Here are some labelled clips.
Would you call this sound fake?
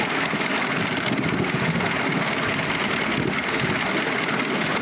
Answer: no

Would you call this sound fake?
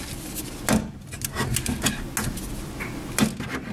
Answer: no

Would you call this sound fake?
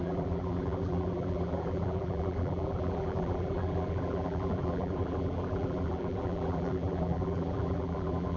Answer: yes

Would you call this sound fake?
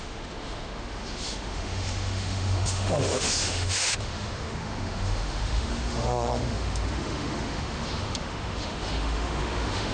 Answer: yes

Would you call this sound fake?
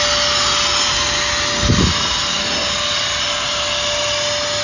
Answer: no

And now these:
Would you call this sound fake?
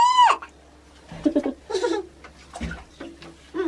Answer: no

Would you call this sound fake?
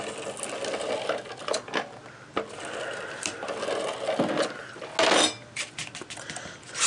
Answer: no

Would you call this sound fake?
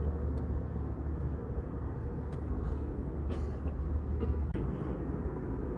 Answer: yes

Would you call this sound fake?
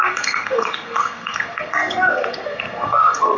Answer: yes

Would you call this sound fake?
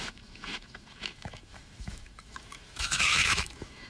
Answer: yes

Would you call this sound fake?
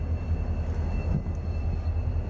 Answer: no